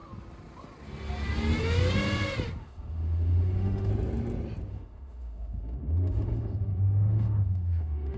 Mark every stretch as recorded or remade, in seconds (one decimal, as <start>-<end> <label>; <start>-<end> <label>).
0.0-2.6 recorded; 2.6-3.9 remade; 3.9-4.7 recorded; 4.7-8.2 remade